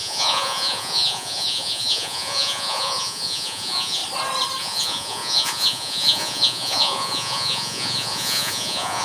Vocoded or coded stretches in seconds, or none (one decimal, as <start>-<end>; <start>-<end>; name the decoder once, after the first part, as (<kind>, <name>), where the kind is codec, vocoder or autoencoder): 0.0-4.0 (vocoder, Vocos); 4.6-9.0

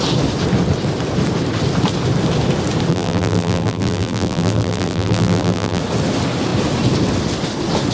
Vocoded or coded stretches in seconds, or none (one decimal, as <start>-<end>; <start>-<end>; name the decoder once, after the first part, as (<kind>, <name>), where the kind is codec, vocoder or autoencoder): 2.9-5.8 (vocoder, BigVGAN v2)

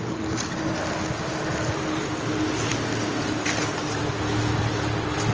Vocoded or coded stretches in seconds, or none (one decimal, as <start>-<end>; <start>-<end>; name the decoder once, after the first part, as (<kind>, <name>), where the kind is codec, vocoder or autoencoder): none

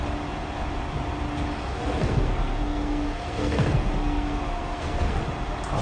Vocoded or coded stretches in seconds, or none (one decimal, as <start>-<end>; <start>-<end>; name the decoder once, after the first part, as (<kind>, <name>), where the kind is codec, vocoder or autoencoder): 1.7-5.2 (codec, SNAC)

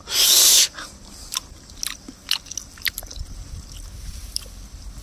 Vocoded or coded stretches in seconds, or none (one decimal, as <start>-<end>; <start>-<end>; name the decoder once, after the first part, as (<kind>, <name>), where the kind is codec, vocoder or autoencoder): none